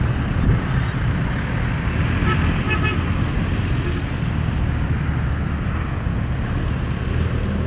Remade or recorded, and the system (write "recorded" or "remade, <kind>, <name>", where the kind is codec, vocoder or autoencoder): recorded